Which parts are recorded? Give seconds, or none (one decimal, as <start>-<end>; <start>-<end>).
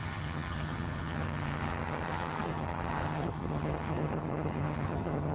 none